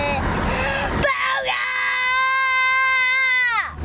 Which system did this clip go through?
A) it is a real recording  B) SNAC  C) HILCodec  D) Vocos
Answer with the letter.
A